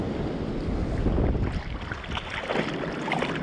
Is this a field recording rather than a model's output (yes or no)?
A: yes